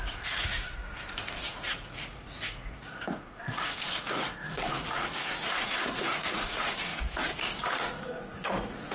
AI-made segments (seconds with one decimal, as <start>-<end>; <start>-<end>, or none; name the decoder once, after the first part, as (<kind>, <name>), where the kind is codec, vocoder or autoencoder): 0.0-0.8 (vocoder, Vocos); 1.5-6.9; 7.6-8.9